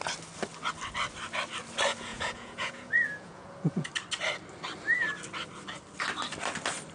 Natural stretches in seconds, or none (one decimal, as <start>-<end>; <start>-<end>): 0.0-2.1; 3.9-6.9